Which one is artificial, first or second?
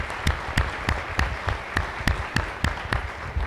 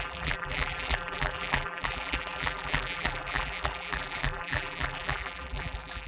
second